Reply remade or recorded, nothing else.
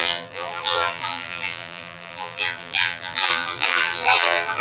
remade